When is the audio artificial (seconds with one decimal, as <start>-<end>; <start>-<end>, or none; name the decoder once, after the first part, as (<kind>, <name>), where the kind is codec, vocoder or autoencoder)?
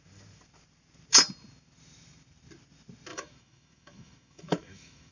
3.1-5.1 (autoencoder, DAC-VAE)